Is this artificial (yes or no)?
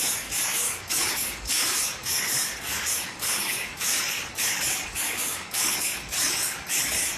yes